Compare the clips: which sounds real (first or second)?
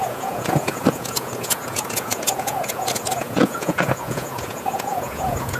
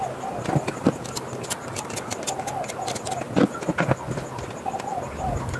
second